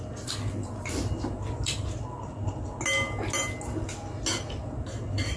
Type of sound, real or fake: real